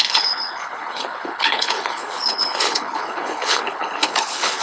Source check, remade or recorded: remade